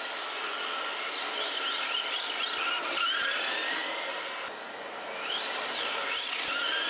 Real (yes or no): yes